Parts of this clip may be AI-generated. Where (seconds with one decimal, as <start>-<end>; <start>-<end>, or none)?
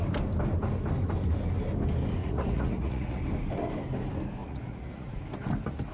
2.2-3.2; 4.4-5.2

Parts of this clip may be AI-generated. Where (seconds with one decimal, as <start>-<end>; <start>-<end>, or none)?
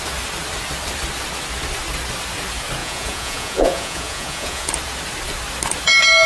2.8-4.7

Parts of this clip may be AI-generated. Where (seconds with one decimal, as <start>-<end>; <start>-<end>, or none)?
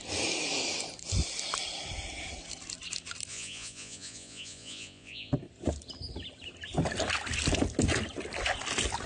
3.3-5.3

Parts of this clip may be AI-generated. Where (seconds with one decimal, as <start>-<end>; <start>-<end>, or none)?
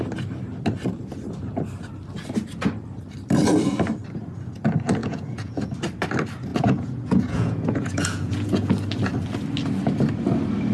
5.0-5.7; 6.5-8.7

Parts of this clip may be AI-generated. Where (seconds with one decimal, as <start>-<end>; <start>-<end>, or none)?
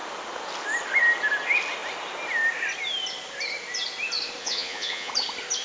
4.4-5.1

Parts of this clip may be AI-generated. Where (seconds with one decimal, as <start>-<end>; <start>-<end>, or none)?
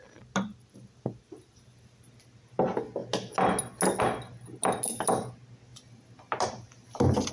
none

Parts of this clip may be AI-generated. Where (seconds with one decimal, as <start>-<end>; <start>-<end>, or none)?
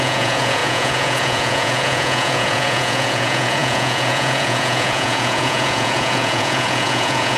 0.0-7.4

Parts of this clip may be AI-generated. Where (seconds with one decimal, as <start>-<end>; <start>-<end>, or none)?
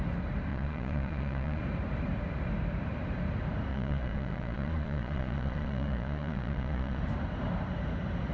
0.5-1.6; 3.7-7.0